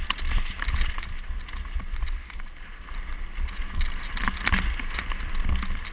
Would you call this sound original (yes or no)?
yes